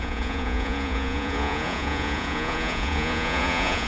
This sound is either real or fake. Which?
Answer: fake